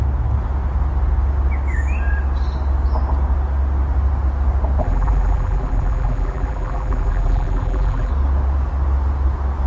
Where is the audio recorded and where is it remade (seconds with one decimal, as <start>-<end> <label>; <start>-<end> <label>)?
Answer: 0.0-4.8 recorded; 4.8-8.1 remade; 8.1-9.7 recorded